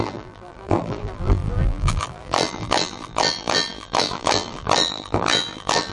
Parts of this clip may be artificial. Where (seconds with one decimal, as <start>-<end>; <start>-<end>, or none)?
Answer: 0.0-5.9